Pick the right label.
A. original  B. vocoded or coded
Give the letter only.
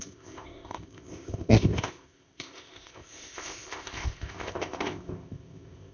B